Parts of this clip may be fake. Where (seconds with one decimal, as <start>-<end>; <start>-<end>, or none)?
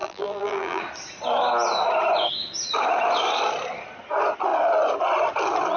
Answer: 0.0-0.8